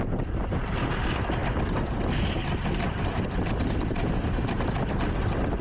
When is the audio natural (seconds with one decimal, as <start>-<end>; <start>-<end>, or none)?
0.0-1.4; 4.2-5.6